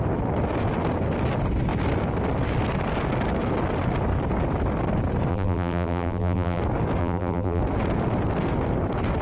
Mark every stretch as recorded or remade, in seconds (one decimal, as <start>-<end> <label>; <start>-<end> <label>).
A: 0.0-5.3 recorded; 5.3-6.6 remade; 6.6-7.0 recorded; 7.0-7.6 remade; 7.6-9.2 recorded